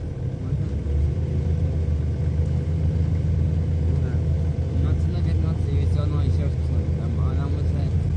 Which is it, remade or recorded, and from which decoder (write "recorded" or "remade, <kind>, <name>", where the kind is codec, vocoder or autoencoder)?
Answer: recorded